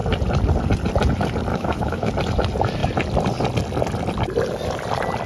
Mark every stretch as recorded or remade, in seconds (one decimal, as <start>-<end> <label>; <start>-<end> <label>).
0.0-1.5 recorded; 1.5-2.1 remade; 2.1-5.3 recorded